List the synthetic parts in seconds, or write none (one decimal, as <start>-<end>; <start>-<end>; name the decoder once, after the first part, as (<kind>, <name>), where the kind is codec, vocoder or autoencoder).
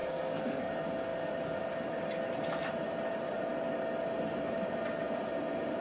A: 0.0-0.7 (codec, SNAC)